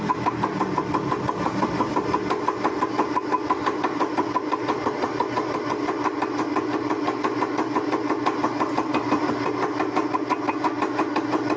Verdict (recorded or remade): recorded